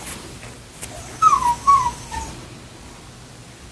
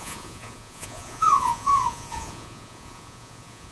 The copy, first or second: second